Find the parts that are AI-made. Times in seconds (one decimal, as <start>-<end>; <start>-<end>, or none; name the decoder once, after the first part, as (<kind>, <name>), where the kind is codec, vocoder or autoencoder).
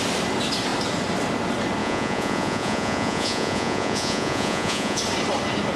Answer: 1.8-5.0 (vocoder, Vocos)